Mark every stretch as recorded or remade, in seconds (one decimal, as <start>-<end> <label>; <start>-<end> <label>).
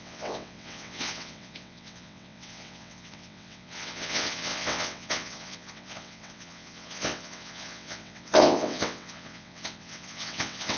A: 0.0-10.8 remade